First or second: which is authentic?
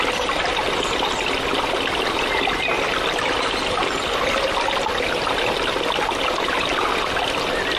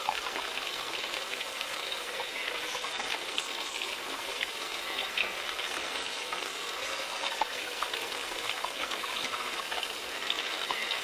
first